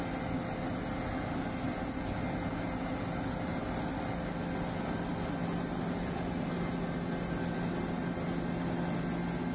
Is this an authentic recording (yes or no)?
yes